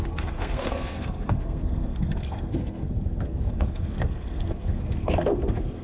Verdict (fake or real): fake